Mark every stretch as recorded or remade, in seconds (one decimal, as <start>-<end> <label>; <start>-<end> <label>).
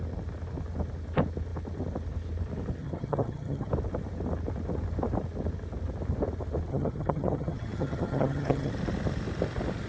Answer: 0.0-2.8 recorded; 2.8-3.7 remade; 3.7-6.7 recorded; 6.7-8.7 remade; 8.7-9.9 recorded